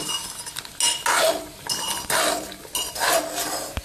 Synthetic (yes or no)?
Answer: no